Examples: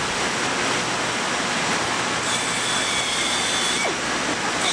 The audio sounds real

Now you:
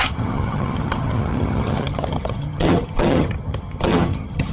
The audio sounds fake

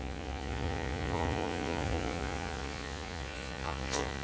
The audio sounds fake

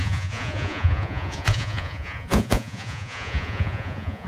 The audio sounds fake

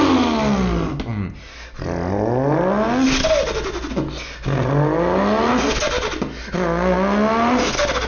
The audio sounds real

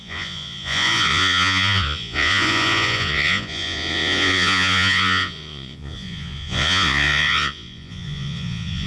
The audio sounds fake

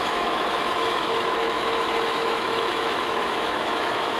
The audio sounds fake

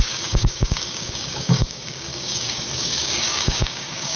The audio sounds fake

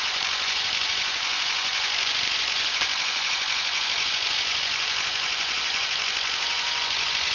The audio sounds fake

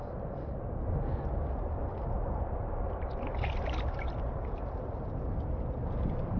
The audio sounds real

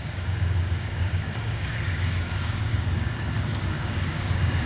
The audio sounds fake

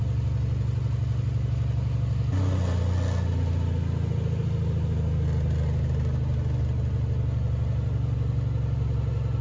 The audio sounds real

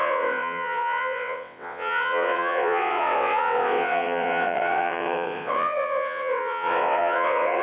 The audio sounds fake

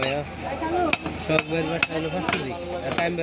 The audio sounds real